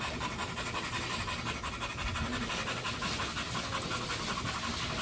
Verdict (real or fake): real